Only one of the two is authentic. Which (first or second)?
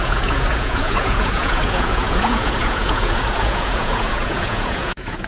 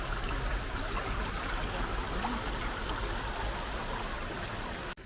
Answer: second